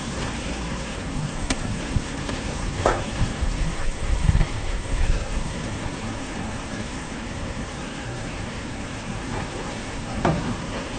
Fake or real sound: fake